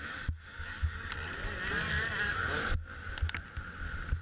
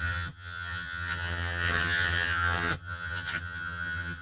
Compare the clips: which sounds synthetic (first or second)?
second